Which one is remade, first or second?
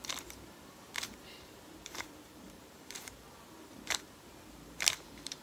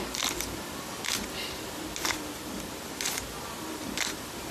first